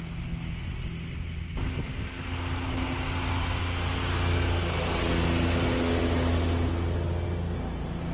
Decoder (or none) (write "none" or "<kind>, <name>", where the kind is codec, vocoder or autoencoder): none